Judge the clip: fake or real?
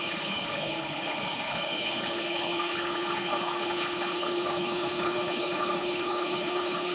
fake